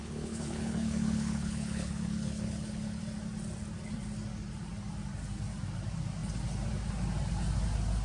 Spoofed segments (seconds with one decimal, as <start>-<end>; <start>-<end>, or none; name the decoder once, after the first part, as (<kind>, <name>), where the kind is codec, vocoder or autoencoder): 0.0-3.0 (codec, HILCodec)